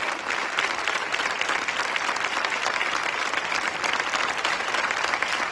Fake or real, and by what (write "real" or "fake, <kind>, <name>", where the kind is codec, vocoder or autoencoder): real